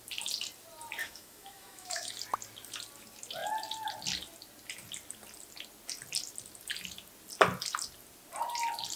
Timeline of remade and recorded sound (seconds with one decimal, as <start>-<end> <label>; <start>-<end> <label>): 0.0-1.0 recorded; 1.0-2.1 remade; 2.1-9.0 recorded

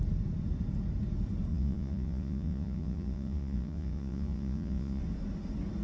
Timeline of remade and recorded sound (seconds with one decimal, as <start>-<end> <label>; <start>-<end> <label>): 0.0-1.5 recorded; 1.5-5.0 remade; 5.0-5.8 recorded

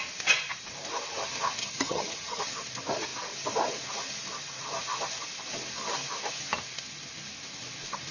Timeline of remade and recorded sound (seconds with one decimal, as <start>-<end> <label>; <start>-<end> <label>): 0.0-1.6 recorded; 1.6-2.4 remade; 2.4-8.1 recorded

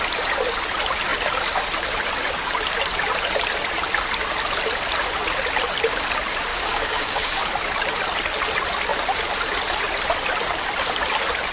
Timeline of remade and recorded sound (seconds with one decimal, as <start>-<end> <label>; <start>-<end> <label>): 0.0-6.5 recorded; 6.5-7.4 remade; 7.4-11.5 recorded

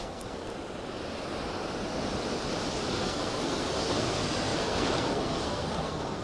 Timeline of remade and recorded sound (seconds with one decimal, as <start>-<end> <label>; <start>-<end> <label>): 0.0-0.5 remade; 0.5-2.9 recorded; 2.9-6.2 remade